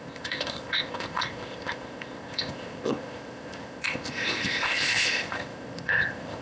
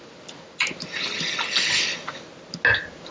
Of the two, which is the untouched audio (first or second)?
second